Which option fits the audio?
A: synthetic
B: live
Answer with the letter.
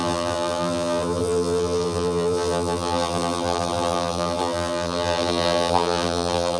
A